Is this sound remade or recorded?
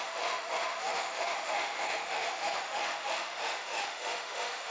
remade